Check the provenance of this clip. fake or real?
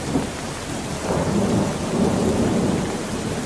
real